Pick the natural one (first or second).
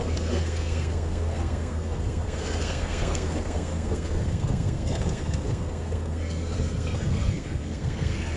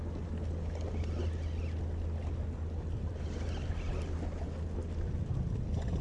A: second